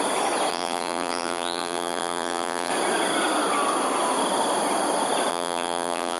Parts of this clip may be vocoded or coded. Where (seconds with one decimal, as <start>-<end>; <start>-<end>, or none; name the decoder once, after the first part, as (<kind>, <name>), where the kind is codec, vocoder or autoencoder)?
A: 0.5-2.7 (vocoder, BigVGAN v2); 5.3-6.2